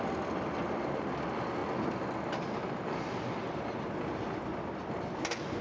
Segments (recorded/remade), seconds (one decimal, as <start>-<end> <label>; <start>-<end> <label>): 0.0-5.6 recorded